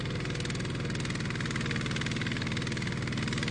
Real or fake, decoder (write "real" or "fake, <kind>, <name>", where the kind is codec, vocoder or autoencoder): real